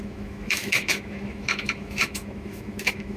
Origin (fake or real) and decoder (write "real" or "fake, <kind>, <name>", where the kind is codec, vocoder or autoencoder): fake, autoencoder, DAC-VAE